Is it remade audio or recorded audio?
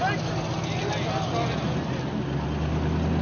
recorded